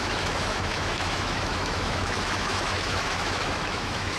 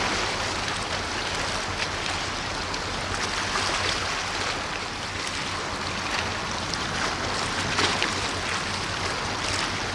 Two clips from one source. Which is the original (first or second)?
second